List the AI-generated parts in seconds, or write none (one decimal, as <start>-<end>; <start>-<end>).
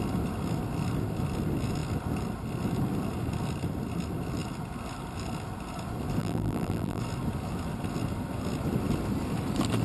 6.2-7.0